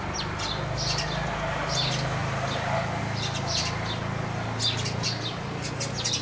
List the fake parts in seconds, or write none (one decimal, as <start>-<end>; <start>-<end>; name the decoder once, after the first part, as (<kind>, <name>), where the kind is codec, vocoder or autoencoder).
none